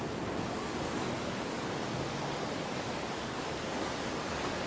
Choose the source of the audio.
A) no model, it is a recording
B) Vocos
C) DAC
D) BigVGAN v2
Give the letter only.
C